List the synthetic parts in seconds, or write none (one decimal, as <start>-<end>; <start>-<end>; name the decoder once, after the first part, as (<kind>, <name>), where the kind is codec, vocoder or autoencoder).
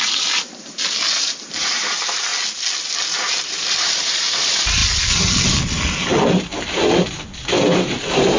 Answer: 0.0-2.3 (vocoder, BigVGAN v2); 3.1-4.8; 6.3-8.4